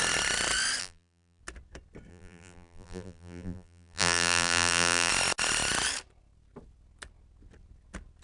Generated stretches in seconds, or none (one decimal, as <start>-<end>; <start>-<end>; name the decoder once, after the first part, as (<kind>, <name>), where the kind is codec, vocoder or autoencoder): 0.8-1.4 (vocoder, BigVGAN v2); 2.1-5.1